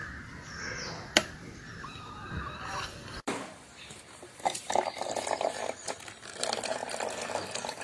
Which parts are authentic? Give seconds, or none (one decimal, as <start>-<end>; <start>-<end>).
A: 6.8-7.8